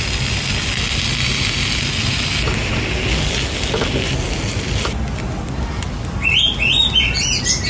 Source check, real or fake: real